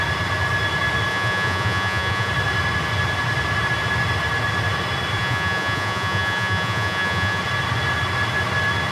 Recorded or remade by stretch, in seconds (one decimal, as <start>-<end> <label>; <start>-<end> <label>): 0.0-1.1 recorded; 1.1-2.3 remade; 2.3-5.2 recorded; 5.2-7.4 remade; 7.4-8.9 recorded